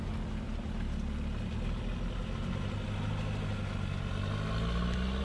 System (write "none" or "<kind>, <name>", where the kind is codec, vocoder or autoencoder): none